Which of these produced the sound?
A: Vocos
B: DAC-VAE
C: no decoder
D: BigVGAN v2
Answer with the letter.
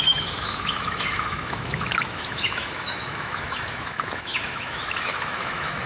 B